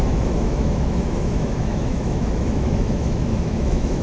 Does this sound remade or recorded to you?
remade